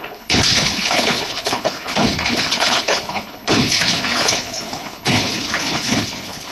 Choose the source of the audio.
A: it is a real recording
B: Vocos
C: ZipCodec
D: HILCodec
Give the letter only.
D